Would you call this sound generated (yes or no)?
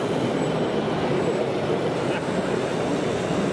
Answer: yes